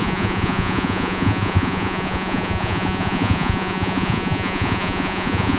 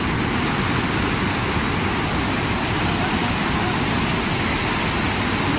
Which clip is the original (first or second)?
second